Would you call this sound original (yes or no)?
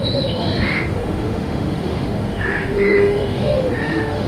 no